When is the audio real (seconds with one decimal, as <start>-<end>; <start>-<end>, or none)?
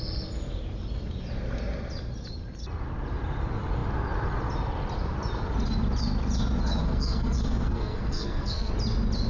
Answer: 0.0-6.8; 8.7-9.3